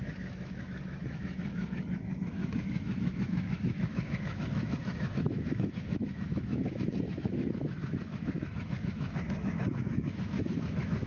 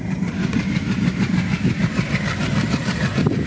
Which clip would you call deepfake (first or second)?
first